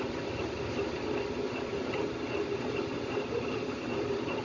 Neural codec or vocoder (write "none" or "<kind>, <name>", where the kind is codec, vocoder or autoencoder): none